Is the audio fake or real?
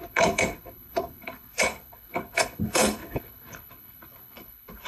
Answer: fake